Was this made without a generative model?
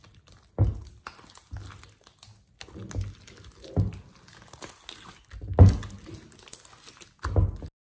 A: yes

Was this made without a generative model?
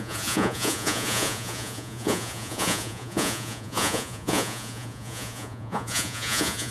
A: no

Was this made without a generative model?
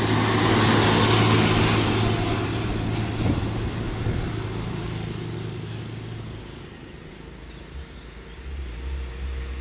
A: yes